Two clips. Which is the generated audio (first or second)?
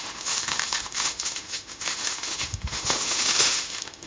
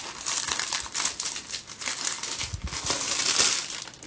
first